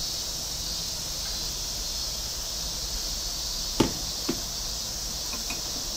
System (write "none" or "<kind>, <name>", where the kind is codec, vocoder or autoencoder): none